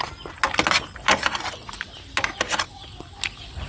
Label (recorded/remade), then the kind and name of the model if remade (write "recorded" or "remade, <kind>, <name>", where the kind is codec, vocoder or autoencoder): recorded